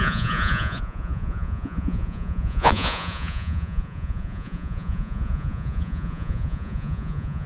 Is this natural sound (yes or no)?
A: no